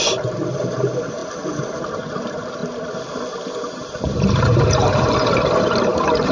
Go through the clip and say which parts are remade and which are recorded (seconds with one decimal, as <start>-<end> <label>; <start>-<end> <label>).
0.0-1.2 remade; 1.2-1.7 recorded; 1.7-2.6 remade; 2.6-3.7 recorded; 3.7-6.3 remade